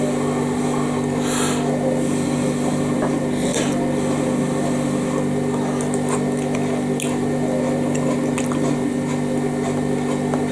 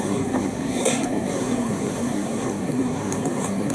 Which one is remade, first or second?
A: second